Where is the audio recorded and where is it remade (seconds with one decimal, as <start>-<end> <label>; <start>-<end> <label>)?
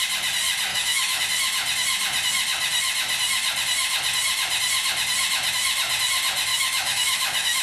0.0-0.7 recorded; 0.7-1.2 remade; 1.2-6.5 recorded; 6.5-7.6 remade